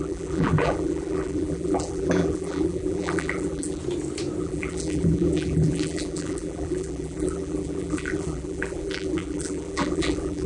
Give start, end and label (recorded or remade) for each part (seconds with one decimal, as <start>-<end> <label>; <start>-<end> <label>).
0.0-3.8 remade; 3.8-4.4 recorded; 4.4-10.5 remade